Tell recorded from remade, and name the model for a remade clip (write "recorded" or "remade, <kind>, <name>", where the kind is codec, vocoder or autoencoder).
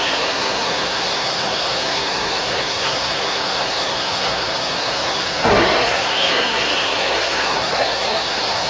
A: remade, codec, SNAC